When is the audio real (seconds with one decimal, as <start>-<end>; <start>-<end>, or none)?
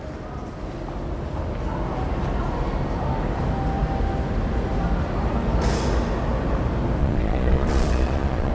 0.0-7.0